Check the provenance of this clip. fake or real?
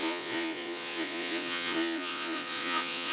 fake